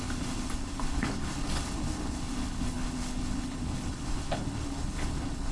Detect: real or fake fake